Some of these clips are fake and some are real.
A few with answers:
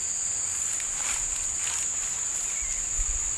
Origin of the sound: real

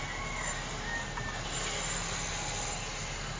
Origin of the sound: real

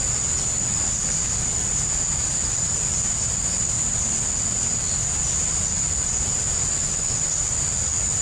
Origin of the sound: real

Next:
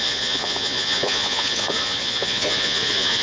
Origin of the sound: fake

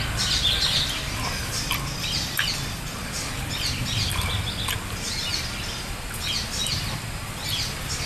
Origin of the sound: real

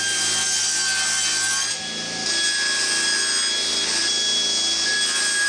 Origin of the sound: real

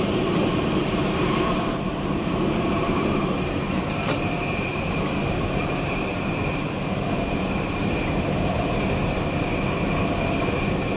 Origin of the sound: fake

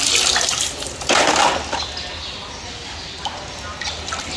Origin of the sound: real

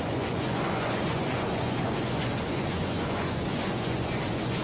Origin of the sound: fake